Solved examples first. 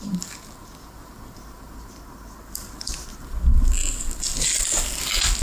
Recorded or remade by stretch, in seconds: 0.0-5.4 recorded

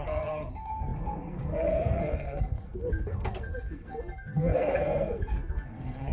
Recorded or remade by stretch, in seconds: 0.0-6.1 remade

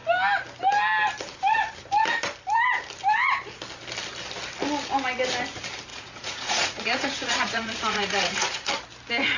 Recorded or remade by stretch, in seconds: 0.0-5.9 recorded; 5.9-8.7 remade; 8.7-9.4 recorded

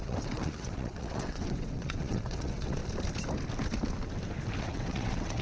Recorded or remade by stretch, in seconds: 0.0-2.8 remade; 2.8-4.6 recorded; 4.6-5.4 remade